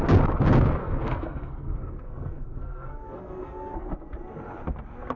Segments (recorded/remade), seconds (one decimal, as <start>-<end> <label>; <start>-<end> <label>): 0.0-0.8 recorded; 0.8-3.9 remade; 3.9-5.2 recorded